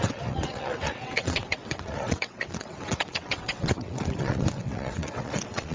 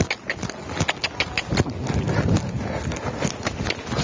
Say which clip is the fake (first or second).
first